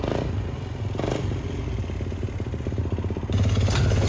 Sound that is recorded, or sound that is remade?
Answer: recorded